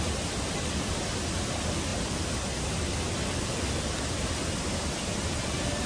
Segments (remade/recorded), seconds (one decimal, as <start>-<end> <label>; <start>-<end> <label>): 0.0-5.9 recorded